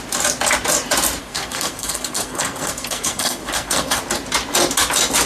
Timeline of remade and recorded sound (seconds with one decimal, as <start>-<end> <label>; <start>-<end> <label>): 0.0-1.2 recorded; 1.2-4.0 remade; 4.0-5.3 recorded